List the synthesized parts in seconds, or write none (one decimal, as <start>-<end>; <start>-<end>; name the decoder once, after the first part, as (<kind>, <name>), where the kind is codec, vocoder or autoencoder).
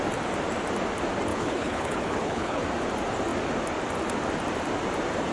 1.3-2.6 (codec, HILCodec)